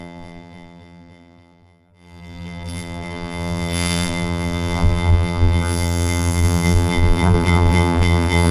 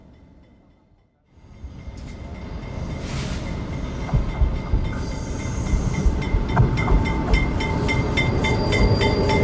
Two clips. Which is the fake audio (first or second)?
first